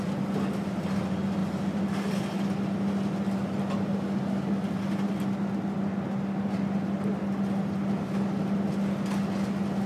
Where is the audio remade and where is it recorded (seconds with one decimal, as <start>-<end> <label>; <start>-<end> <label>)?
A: 0.0-9.9 recorded